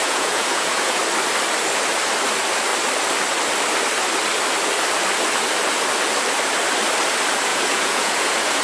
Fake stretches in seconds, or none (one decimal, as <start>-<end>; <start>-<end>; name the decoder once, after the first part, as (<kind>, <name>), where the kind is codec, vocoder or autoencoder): 0.0-1.0 (vocoder, Vocos); 7.5-8.6